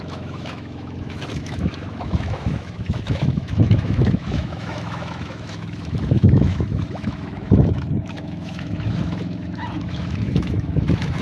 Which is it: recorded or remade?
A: remade